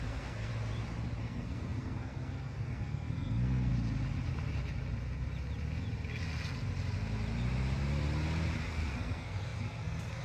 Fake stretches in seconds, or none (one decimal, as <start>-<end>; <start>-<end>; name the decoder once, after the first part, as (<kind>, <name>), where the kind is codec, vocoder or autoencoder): 0.0-0.5 (codec, SNAC); 1.2-3.7; 8.7-10.2